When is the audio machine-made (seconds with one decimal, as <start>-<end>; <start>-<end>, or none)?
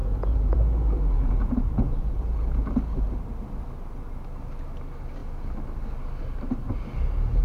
0.0-2.7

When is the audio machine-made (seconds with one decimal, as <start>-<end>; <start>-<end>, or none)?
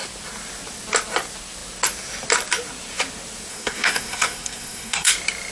3.5-5.1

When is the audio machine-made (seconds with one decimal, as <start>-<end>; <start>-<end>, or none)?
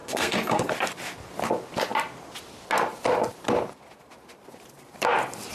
0.0-0.7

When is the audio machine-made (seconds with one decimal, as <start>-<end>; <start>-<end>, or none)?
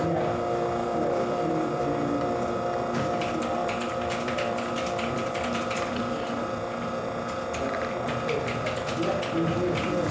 0.8-1.8; 3.6-6.2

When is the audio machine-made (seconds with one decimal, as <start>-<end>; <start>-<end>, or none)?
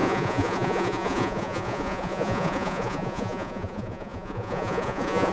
0.0-5.3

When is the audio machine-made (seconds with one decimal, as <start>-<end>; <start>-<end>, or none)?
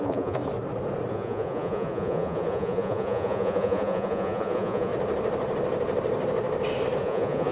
0.0-0.4; 1.1-4.9; 7.0-7.5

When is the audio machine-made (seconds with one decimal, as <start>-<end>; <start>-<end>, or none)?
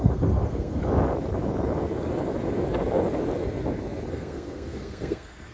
0.0-0.8; 4.1-5.5